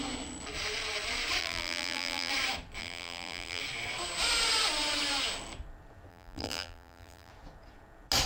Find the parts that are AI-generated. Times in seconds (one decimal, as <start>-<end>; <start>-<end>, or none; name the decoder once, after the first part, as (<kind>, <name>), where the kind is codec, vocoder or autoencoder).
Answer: 1.4-2.3 (vocoder, BigVGAN v2); 2.8-3.6; 6.1-7.3